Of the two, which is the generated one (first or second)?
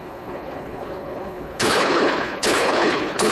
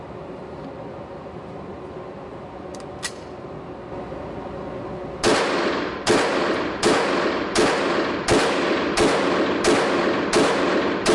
first